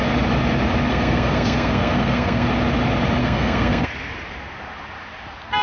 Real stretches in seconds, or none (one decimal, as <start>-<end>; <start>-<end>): 0.0-0.9; 2.5-3.2; 3.9-5.6